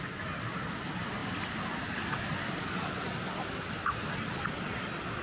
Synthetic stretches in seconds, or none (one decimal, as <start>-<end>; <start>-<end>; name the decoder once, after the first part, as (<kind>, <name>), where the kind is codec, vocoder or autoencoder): none